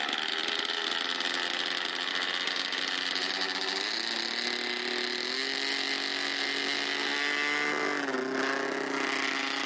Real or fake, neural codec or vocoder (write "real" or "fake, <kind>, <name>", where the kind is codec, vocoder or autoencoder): real